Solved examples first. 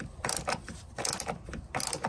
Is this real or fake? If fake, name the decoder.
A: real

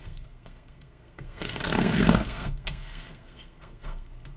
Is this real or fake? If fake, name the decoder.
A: fake, codec, SNAC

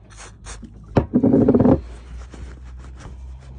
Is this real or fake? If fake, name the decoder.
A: real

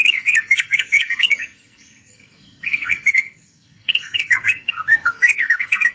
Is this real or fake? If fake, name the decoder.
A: fake, codec, SNAC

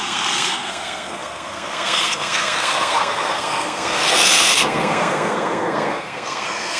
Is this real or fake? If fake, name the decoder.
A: fake, codec, SNAC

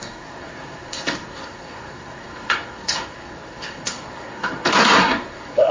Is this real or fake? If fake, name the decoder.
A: fake, codec, SNAC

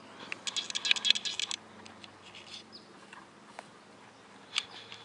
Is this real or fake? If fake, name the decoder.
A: real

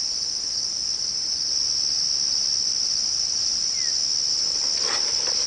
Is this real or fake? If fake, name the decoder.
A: real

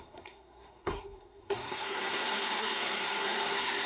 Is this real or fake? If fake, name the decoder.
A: fake, codec, SNAC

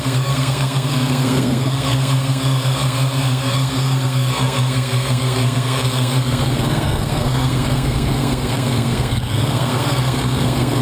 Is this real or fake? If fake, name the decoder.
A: fake, codec, SNAC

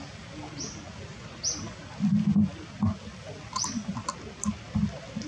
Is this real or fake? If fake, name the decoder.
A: real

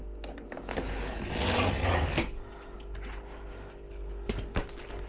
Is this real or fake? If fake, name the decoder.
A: real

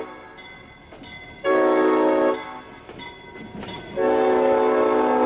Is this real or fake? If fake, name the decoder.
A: real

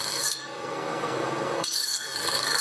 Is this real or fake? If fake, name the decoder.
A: fake, codec, SNAC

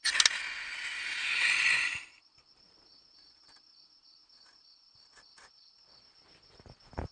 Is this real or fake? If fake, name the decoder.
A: real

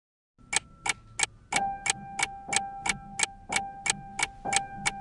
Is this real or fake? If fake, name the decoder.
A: real